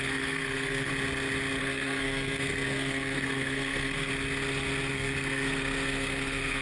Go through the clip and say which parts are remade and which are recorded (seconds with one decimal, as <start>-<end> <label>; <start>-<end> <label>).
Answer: 0.0-0.9 remade; 0.9-1.6 recorded; 1.6-4.1 remade; 4.1-4.9 recorded; 4.9-6.6 remade

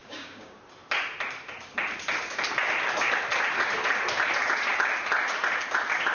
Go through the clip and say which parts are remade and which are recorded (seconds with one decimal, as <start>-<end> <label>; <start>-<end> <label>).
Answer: 0.0-0.6 remade; 0.6-6.1 recorded